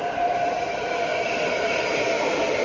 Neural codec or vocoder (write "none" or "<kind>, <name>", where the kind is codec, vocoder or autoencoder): none